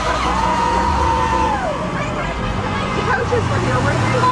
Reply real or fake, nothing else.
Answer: fake